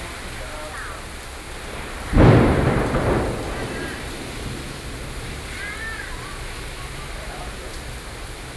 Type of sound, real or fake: real